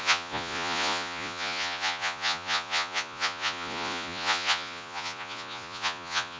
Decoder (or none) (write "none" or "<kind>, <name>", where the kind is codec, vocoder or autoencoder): vocoder, Vocos